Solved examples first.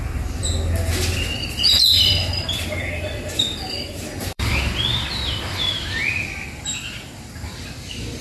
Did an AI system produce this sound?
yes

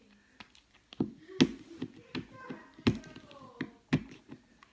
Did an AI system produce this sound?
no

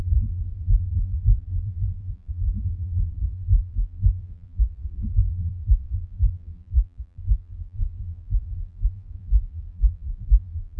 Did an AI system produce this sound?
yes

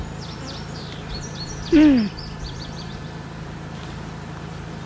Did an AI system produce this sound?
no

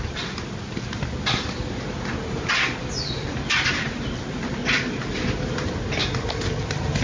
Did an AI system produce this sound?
no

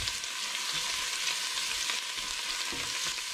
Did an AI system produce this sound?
no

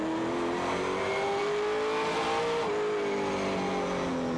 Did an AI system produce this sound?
no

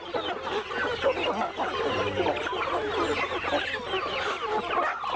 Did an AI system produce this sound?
no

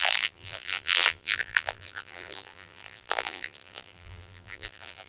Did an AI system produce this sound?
yes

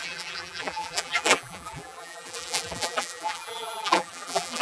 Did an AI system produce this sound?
yes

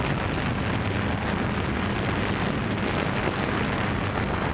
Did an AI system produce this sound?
no